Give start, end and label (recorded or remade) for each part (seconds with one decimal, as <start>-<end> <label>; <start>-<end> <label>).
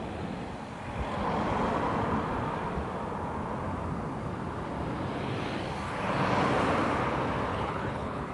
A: 0.0-7.5 recorded; 7.5-8.3 remade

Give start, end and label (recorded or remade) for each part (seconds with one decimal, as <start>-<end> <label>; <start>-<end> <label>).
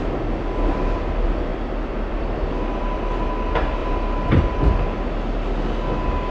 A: 0.0-1.5 recorded; 1.5-3.2 remade; 3.2-3.8 recorded; 3.8-4.4 remade; 4.4-6.3 recorded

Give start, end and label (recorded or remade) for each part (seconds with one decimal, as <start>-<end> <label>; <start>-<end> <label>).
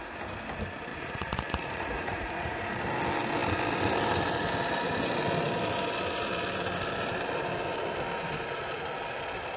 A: 0.0-0.9 recorded; 0.9-2.6 remade; 2.6-9.6 recorded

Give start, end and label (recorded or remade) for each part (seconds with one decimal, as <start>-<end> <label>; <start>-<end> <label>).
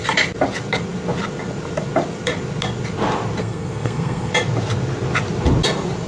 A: 0.0-3.4 recorded; 3.4-4.3 remade; 4.3-6.1 recorded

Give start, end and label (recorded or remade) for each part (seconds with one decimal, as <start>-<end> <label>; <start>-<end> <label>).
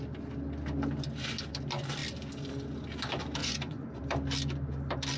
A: 0.0-3.4 recorded; 3.4-4.0 remade; 4.0-5.2 recorded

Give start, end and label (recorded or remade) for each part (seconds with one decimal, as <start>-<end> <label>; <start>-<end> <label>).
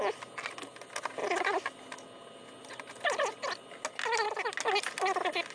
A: 0.0-5.5 recorded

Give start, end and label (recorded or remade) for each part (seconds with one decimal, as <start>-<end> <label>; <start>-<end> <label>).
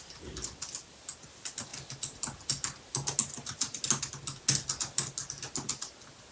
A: 0.0-6.3 recorded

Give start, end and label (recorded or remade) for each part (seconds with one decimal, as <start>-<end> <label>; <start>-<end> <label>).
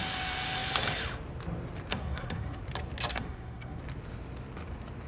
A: 0.0-1.9 recorded; 1.9-2.6 remade; 2.6-3.1 recorded; 3.1-3.8 remade; 3.8-5.1 recorded